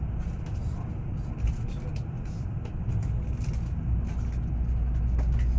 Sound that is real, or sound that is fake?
real